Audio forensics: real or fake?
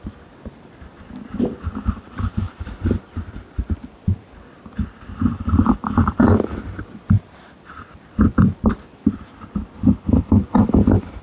fake